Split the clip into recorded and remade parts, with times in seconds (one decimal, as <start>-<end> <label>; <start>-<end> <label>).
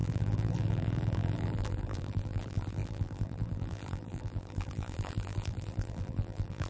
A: 0.0-6.7 remade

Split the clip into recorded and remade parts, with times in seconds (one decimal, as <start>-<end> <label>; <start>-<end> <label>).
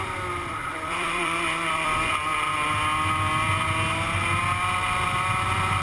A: 0.0-0.5 recorded; 0.5-2.1 remade; 2.1-5.8 recorded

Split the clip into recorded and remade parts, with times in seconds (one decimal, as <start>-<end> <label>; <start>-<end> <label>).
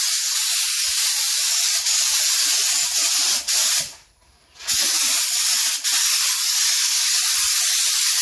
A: 0.0-3.6 recorded; 3.6-8.2 remade